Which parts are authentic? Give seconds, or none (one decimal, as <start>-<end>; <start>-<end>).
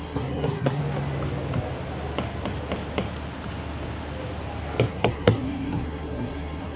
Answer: 0.8-4.9